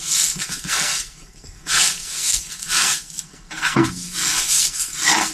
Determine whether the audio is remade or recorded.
remade